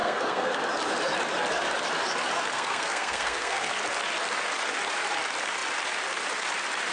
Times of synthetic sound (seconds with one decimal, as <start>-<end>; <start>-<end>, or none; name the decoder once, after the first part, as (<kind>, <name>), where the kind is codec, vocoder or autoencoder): 0.0-0.6 (codec, SNAC); 2.5-3.7